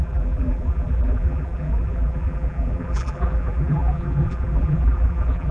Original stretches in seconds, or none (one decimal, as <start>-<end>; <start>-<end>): none